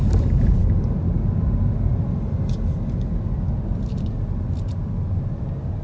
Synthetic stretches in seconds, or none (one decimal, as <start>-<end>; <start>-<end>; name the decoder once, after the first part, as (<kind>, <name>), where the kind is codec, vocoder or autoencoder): none